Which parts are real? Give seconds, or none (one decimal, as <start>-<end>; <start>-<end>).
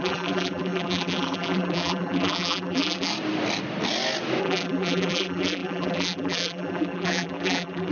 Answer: 3.1-4.4